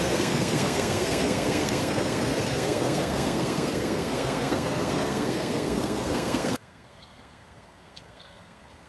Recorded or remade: remade